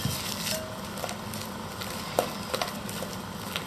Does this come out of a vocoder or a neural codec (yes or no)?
no